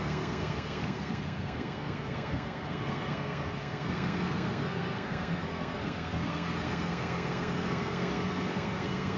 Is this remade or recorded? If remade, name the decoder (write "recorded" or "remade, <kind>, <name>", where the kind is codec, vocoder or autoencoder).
remade, codec, SNAC